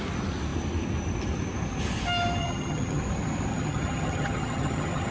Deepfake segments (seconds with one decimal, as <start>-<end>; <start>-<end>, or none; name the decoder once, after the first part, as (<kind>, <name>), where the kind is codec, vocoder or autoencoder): 2.4-3.0 (vocoder, HiFi-GAN); 3.5-5.1

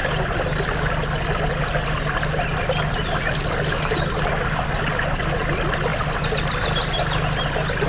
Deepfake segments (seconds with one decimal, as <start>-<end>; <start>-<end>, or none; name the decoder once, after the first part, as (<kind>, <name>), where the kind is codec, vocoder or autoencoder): none

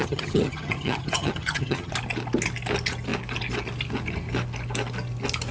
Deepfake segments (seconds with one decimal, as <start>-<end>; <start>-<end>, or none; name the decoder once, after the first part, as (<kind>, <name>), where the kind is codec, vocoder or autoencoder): 0.0-1.9 (vocoder, HiFi-GAN)

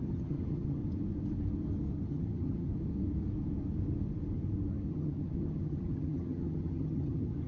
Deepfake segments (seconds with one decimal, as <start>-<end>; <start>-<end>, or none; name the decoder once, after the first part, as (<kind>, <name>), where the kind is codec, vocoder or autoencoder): 0.0-0.8 (vocoder, HiFi-GAN); 2.1-2.7; 4.9-7.5

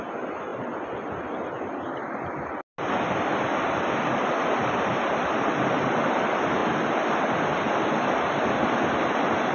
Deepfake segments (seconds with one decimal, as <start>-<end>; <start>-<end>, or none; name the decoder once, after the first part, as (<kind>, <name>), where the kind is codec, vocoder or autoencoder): none

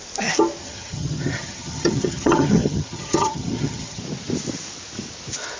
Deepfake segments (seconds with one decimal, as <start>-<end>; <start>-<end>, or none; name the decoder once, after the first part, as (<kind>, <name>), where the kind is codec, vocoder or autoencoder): 0.6-4.0 (vocoder, HiFi-GAN)